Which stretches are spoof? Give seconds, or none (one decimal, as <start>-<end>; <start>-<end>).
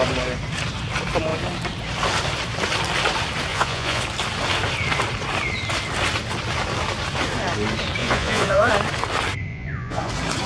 3.5-4.0; 8.0-8.7; 9.5-10.1